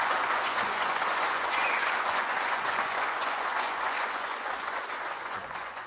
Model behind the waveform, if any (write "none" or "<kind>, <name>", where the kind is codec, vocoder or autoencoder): vocoder, Vocos